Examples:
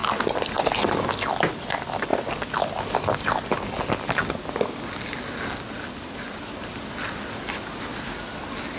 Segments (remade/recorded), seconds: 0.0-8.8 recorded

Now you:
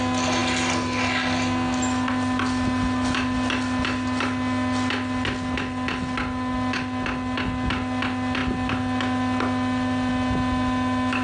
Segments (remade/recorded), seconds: 0.0-11.2 recorded

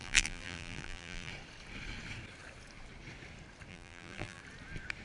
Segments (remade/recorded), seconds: 0.0-1.3 remade; 1.3-3.7 recorded; 3.7-4.4 remade; 4.4-5.0 recorded

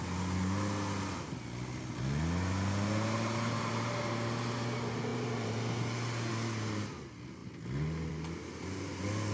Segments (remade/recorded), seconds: 0.0-9.3 recorded

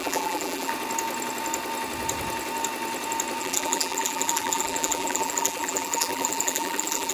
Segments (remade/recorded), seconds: 0.0-0.7 remade; 0.7-3.4 recorded; 3.4-7.1 remade

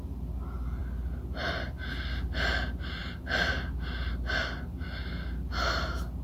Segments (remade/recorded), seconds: 0.0-6.2 recorded

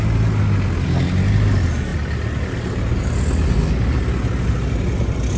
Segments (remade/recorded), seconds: 0.0-5.4 recorded

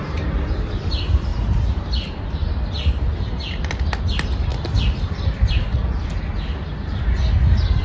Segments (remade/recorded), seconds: 0.0-7.8 recorded